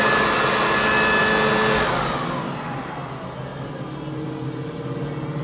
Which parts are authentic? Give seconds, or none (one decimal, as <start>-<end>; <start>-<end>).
0.0-5.4